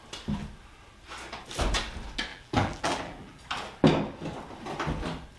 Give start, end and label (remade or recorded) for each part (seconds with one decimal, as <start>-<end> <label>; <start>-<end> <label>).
0.0-2.3 recorded; 2.3-3.4 remade; 3.4-5.4 recorded